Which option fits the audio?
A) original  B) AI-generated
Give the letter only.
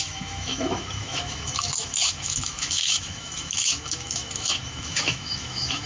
B